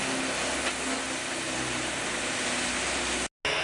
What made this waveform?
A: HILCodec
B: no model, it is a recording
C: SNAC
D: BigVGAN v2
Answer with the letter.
B